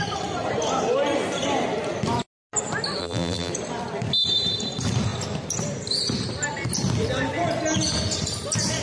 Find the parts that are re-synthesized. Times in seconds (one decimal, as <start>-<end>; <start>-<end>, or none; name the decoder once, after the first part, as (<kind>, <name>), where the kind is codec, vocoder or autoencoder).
3.0-3.5 (vocoder, BigVGAN v2)